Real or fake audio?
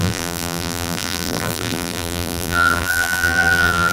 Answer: fake